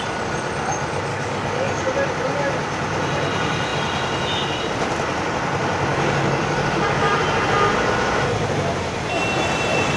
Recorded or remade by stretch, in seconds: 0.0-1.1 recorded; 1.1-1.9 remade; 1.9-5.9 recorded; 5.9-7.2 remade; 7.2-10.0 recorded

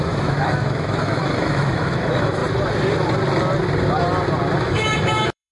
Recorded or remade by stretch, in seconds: 0.0-2.4 remade; 2.4-4.6 recorded; 4.6-5.5 remade

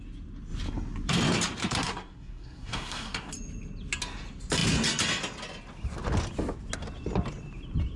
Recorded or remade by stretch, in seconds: 0.0-1.6 recorded; 1.6-3.3 remade; 3.3-8.0 recorded